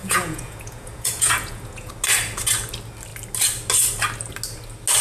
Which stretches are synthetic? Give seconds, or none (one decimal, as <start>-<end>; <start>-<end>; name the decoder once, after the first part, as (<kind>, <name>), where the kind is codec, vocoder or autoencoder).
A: 0.0-1.9 (vocoder, Vocos)